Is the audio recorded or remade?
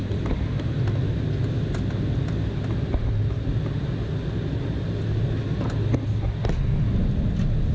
recorded